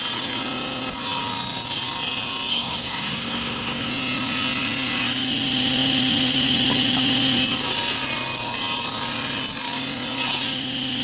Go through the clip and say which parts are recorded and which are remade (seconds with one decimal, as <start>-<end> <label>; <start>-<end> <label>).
0.0-2.5 recorded; 2.5-3.9 remade; 3.9-11.0 recorded